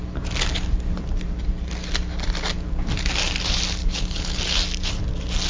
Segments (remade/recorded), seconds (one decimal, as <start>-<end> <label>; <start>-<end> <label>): 0.0-3.8 recorded; 3.8-4.4 remade; 4.4-5.5 recorded